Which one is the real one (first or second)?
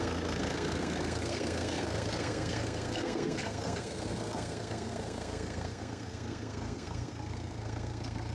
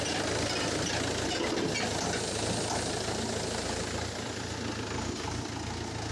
second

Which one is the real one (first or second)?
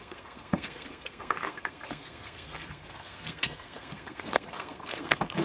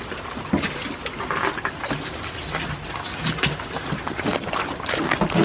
second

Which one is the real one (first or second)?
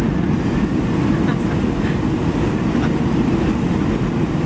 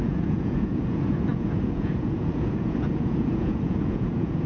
first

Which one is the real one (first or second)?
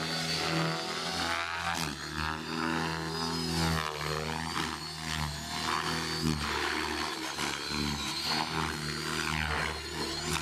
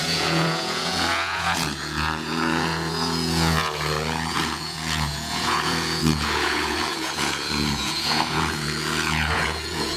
first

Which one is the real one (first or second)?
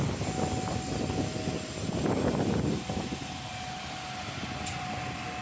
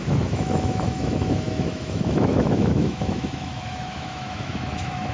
first